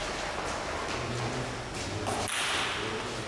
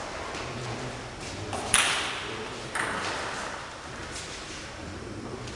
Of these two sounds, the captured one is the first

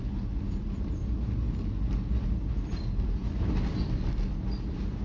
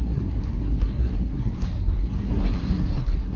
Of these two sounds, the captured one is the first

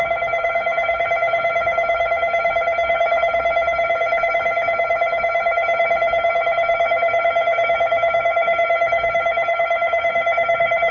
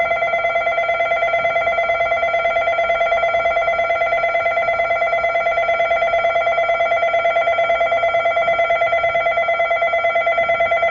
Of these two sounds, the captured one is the second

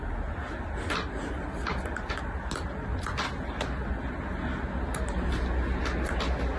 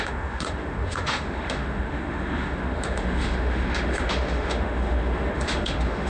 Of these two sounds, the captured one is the first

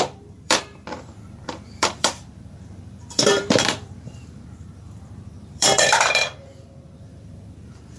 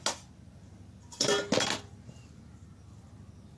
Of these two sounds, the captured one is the second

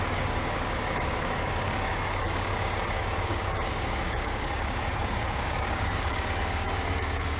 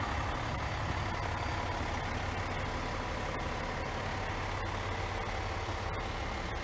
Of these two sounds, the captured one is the second